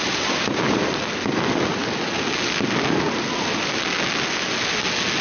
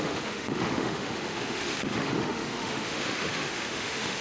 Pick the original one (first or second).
first